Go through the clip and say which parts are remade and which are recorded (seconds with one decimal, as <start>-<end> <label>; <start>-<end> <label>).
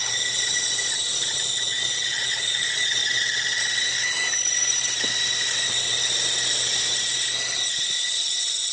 0.0-3.0 remade; 3.0-7.9 recorded; 7.9-8.7 remade